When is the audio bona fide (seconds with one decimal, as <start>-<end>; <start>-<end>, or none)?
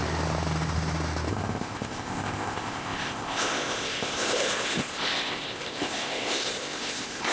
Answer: 0.0-1.3